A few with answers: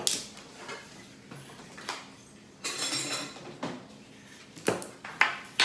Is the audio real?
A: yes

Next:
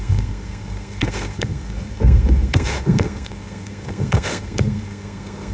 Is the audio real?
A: no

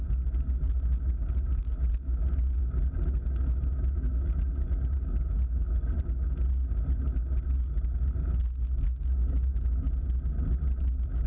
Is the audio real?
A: yes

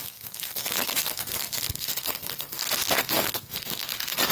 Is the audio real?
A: no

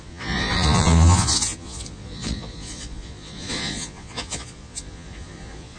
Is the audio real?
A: no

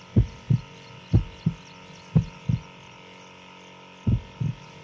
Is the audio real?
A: yes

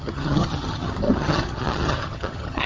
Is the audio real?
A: no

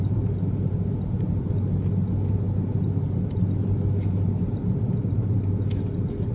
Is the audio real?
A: yes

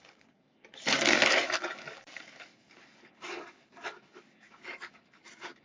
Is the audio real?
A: no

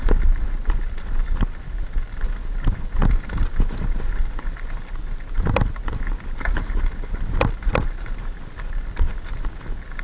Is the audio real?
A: yes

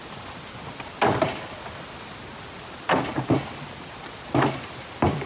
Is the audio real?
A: yes